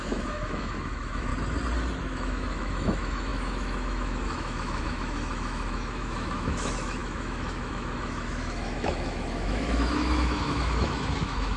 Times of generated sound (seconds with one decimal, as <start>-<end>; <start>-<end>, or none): 0.0-1.3; 2.0-11.6